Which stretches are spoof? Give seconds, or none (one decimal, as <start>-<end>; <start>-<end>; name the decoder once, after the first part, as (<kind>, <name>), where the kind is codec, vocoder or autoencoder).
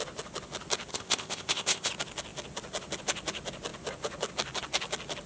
0.9-1.9 (codec, ZipCodec)